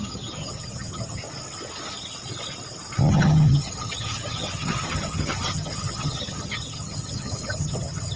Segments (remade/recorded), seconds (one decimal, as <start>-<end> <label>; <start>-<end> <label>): 0.0-1.2 remade; 1.2-3.1 recorded; 3.1-8.2 remade

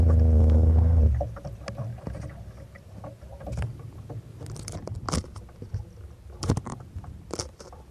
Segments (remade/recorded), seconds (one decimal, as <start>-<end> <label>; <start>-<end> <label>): 0.0-0.4 recorded; 0.4-1.0 remade; 1.0-7.9 recorded

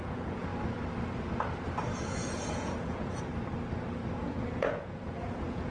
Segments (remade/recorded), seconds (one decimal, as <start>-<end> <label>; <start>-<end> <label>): 0.0-0.5 remade; 0.5-2.1 recorded; 2.1-3.3 remade; 3.3-4.1 recorded; 4.1-5.7 remade

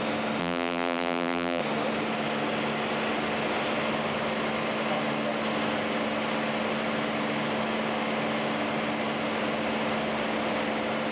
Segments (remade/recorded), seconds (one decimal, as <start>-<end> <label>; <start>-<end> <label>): 0.0-0.4 recorded; 0.4-1.6 remade; 1.6-11.1 recorded

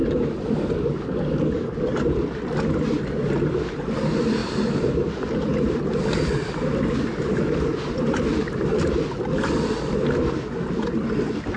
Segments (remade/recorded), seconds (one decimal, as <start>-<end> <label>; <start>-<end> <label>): 0.0-0.6 remade; 0.6-4.4 recorded; 4.4-5.8 remade; 5.8-8.3 recorded; 8.3-9.0 remade; 9.0-11.6 recorded